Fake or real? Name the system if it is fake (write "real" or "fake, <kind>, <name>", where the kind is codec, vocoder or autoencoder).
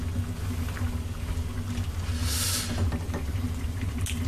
real